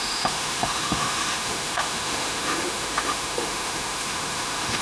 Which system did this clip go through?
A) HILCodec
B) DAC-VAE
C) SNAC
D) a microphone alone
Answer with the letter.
B